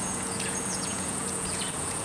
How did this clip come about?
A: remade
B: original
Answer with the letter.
A